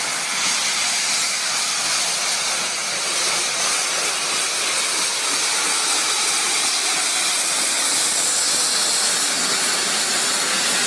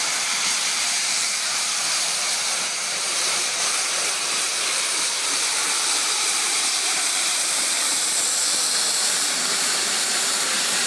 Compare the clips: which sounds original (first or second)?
first